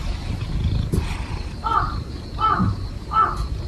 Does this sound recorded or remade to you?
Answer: recorded